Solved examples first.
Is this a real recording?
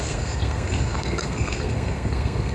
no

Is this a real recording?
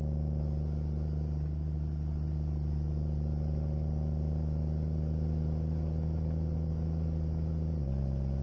yes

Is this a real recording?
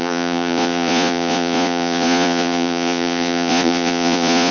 no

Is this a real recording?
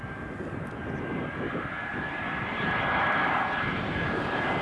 yes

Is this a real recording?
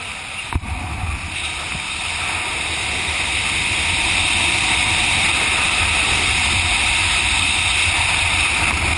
yes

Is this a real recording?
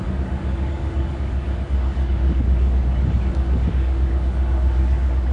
no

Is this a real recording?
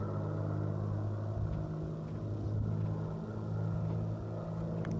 yes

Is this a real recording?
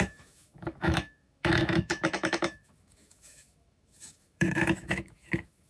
no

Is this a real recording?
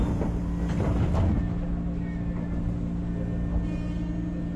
yes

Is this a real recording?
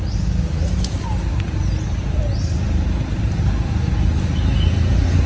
yes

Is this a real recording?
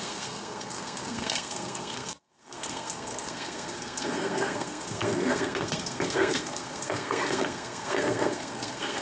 no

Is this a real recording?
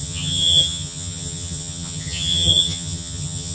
no